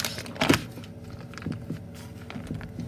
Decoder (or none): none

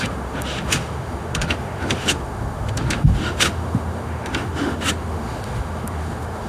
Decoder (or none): autoencoder, DAC-VAE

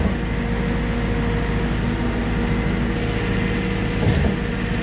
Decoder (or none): none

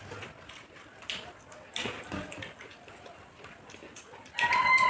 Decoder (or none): none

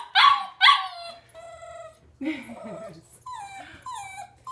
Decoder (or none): none